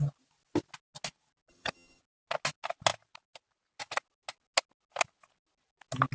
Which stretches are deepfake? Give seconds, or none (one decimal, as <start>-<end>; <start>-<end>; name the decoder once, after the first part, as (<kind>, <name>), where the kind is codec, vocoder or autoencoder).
1.5-2.0 (vocoder, HiFi-GAN)